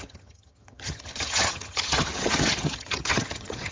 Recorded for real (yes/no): no